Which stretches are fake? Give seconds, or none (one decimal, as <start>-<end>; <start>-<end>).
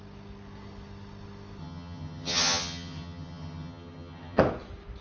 1.6-4.4